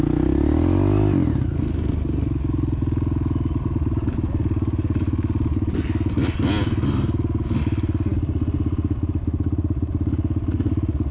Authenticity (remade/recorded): recorded